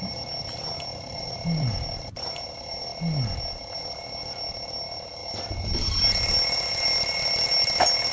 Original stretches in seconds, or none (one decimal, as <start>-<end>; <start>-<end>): 0.0-0.9; 2.3-8.1